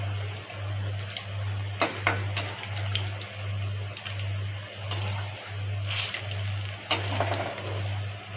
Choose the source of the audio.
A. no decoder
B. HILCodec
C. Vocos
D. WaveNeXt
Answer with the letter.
A